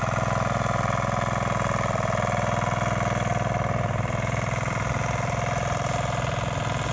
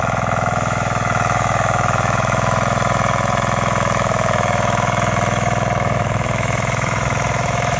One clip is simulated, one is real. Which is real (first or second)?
first